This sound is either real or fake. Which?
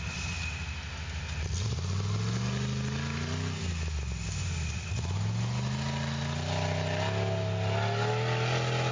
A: real